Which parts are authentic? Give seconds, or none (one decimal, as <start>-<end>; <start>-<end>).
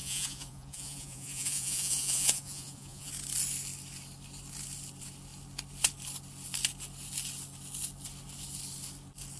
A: 3.1-9.4